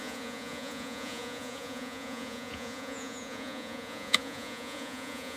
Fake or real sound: fake